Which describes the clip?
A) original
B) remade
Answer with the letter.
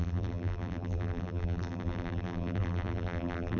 B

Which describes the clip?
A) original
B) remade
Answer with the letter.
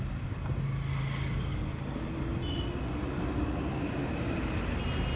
A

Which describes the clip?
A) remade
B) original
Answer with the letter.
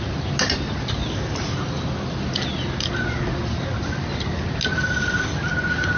B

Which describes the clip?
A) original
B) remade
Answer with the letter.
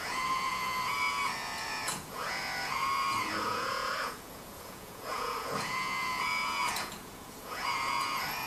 B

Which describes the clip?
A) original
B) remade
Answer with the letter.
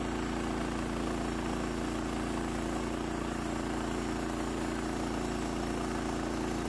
A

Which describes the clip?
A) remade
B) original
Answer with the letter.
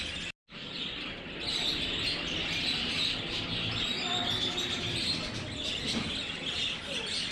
B